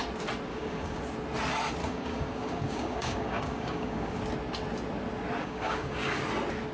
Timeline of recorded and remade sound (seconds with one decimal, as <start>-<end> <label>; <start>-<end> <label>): 0.0-0.5 recorded; 0.5-1.0 remade; 1.0-1.8 recorded; 1.8-4.2 remade; 4.2-5.4 recorded; 5.4-6.2 remade; 6.2-6.7 recorded